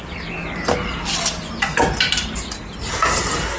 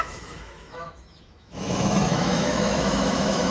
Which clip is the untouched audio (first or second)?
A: first